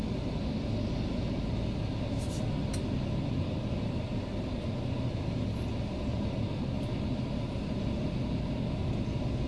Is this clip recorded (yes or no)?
yes